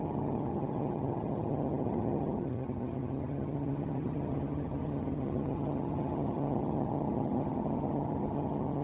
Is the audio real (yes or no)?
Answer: no